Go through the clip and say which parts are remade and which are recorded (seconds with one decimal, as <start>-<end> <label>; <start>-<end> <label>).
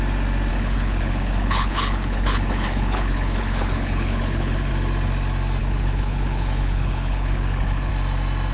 0.0-0.5 recorded; 0.5-4.7 remade; 4.7-5.6 recorded; 5.6-7.9 remade; 7.9-8.5 recorded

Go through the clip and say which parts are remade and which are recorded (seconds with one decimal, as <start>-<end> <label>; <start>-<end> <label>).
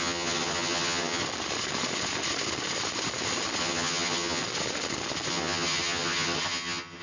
0.0-1.2 remade; 1.2-3.6 recorded; 3.6-4.4 remade; 4.4-5.3 recorded; 5.3-7.0 remade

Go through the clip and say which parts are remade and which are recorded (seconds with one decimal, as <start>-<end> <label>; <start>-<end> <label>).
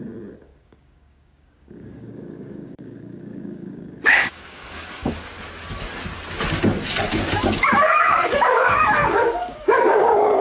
0.0-0.5 recorded; 0.5-5.1 remade; 5.1-7.1 recorded; 7.1-10.4 remade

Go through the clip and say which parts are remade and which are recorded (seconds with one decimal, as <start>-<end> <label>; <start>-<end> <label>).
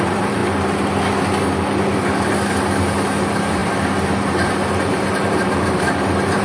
0.0-0.4 remade; 0.4-3.2 recorded; 3.2-6.4 remade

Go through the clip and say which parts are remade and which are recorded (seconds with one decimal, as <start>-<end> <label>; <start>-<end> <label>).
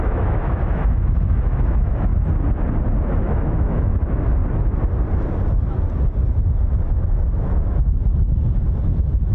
0.0-2.1 remade; 2.1-3.2 recorded; 3.2-4.4 remade; 4.4-8.8 recorded; 8.8-9.3 remade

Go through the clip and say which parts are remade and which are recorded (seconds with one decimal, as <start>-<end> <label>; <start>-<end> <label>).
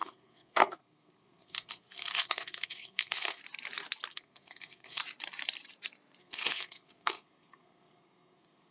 0.0-3.4 remade; 3.4-4.1 recorded; 4.1-5.0 remade; 5.0-6.2 recorded; 6.2-8.7 remade